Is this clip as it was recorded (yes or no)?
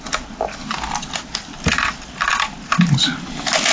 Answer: yes